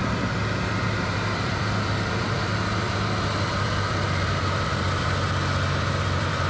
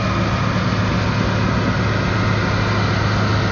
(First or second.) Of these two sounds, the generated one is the first